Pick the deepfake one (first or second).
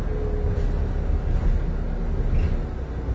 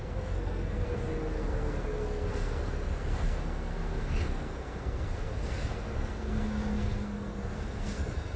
second